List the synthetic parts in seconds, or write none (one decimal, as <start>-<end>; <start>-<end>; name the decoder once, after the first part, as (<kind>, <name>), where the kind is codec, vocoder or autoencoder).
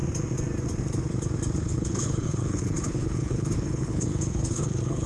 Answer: 1.6-5.1 (codec, HILCodec)